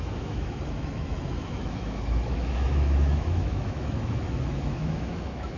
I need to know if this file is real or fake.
fake